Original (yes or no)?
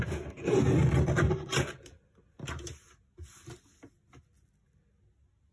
yes